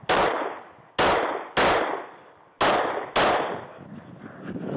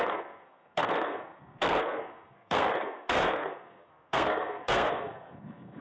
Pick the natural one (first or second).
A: first